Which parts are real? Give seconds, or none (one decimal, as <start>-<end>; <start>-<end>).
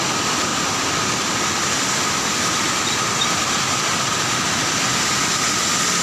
0.0-6.0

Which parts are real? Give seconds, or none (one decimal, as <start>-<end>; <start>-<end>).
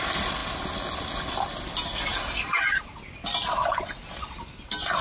0.0-5.0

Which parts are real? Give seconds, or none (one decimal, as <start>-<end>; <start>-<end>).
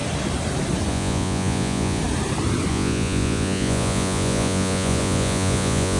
0.0-0.9; 2.0-2.7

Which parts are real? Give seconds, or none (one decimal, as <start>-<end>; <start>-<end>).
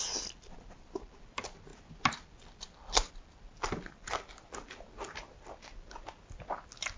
0.0-7.0